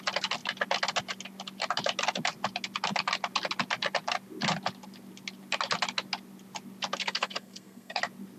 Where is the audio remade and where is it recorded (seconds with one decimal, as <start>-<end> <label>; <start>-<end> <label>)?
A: 0.0-7.0 recorded; 7.0-8.0 remade; 8.0-8.4 recorded